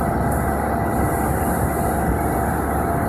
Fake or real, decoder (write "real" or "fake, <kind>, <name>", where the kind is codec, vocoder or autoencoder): real